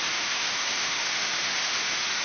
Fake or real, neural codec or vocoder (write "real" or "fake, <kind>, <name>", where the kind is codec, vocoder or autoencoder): fake, autoencoder, DAC-VAE